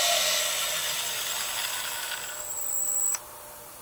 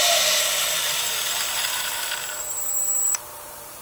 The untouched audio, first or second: first